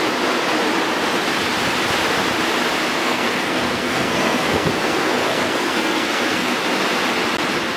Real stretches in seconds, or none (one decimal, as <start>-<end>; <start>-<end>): 0.0-3.0; 6.5-7.8